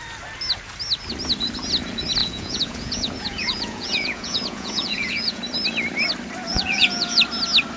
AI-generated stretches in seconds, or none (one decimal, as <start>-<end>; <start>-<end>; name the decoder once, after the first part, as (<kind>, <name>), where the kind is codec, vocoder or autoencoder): 2.2-5.4 (vocoder, Vocos); 6.5-7.2